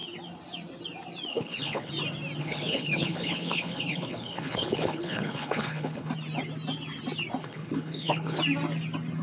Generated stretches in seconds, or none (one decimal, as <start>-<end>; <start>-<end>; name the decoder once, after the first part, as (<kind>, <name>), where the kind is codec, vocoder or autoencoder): 1.3-1.9 (codec, HILCodec); 2.4-6.1; 7.4-8.4